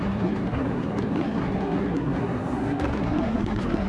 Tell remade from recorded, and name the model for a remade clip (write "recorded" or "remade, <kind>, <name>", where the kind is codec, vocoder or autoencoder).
remade, codec, SNAC